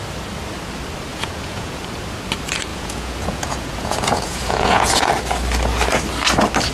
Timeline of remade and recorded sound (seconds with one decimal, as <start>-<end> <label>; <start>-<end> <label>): 0.0-1.1 recorded; 1.1-1.8 remade; 1.8-2.7 recorded; 2.7-5.1 remade; 5.1-6.7 recorded